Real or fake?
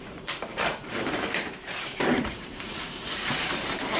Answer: fake